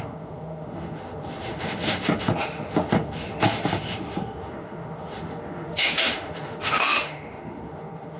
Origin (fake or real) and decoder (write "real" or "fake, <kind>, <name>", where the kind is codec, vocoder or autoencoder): fake, autoencoder, DAC-VAE